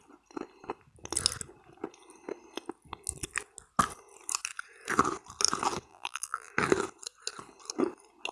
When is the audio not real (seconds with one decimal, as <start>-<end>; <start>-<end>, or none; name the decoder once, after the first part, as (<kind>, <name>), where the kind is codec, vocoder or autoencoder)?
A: 5.9-6.5 (vocoder, BigVGAN v2)